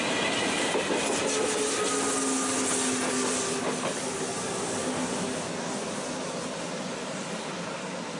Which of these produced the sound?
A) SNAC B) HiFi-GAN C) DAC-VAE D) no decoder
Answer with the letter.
D